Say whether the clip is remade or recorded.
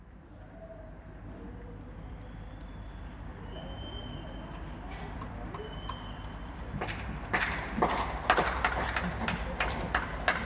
recorded